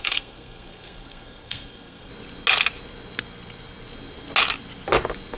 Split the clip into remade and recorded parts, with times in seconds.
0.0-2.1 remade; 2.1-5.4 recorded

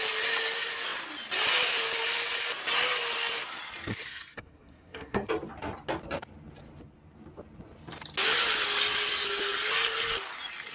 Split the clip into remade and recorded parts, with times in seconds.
0.0-3.9 recorded; 3.9-5.3 remade; 5.3-10.7 recorded

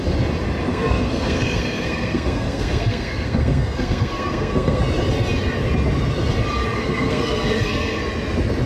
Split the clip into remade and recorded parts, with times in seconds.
0.0-0.7 recorded; 0.7-4.8 remade; 4.8-6.8 recorded; 6.8-8.0 remade; 8.0-8.7 recorded

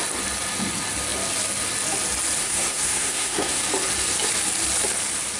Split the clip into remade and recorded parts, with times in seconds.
0.0-2.4 recorded; 2.4-3.6 remade; 3.6-5.4 recorded

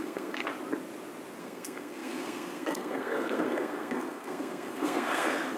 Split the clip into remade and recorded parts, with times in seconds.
0.0-0.5 remade; 0.5-1.4 recorded; 1.4-5.6 remade

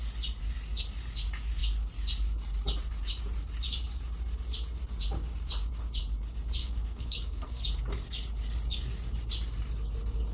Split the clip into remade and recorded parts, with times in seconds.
0.0-6.6 recorded; 6.6-7.6 remade; 7.6-10.3 recorded

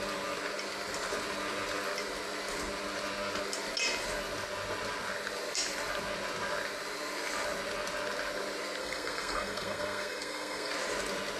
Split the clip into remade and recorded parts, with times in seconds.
0.0-8.8 recorded; 8.8-10.7 remade; 10.7-11.4 recorded